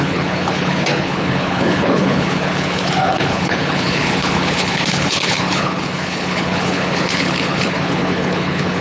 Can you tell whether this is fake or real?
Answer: fake